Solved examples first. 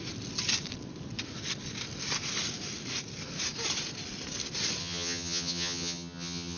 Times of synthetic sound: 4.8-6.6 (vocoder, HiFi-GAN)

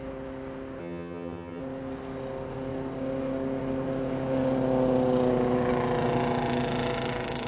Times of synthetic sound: 0.8-1.6 (vocoder, HiFi-GAN)

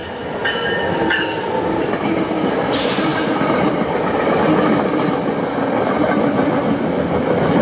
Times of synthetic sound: none